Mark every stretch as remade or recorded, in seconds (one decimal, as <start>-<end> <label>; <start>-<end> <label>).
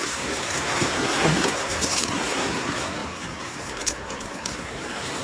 0.0-5.2 remade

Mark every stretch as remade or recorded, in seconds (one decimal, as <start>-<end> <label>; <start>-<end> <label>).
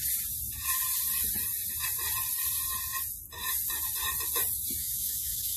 0.0-4.8 recorded; 4.8-5.6 remade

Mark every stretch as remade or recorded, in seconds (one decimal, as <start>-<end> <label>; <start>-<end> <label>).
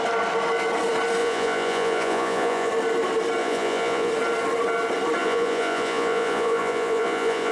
0.0-1.2 recorded; 1.2-2.7 remade; 2.7-3.4 recorded; 3.4-4.1 remade; 4.1-5.2 recorded; 5.2-7.5 remade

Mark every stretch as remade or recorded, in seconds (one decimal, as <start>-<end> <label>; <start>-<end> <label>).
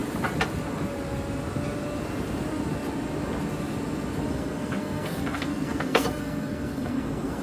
0.0-4.3 recorded; 4.3-7.4 remade